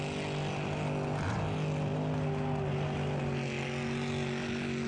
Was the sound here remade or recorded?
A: recorded